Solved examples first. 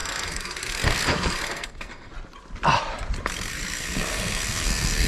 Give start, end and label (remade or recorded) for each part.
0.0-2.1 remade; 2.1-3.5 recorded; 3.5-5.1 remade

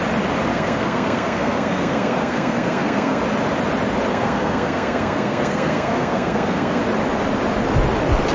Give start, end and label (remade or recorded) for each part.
0.0-0.5 recorded; 0.5-3.2 remade; 3.2-4.1 recorded; 4.1-6.8 remade; 6.8-8.3 recorded

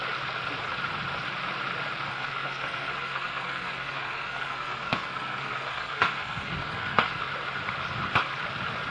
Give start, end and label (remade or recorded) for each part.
0.0-2.1 recorded; 2.1-7.2 remade; 7.2-8.9 recorded